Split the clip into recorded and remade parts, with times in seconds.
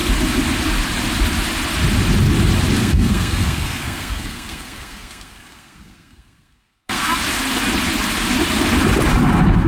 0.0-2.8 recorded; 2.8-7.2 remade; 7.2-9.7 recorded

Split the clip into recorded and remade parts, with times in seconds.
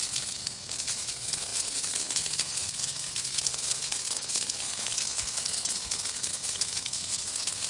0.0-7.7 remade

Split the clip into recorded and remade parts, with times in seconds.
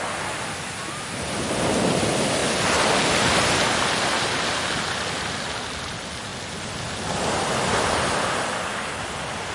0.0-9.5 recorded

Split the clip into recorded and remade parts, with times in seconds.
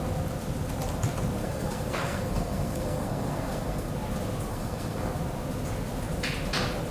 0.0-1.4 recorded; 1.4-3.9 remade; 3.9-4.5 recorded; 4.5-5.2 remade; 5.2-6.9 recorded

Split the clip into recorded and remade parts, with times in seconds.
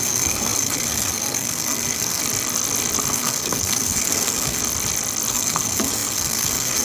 0.0-2.2 remade; 2.2-3.1 recorded; 3.1-4.6 remade; 4.6-5.3 recorded; 5.3-6.8 remade